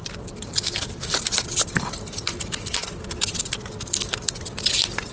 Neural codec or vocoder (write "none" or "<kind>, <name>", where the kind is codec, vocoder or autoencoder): none